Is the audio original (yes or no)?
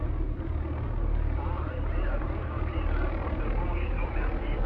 no